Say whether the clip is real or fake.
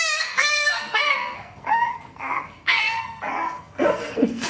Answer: fake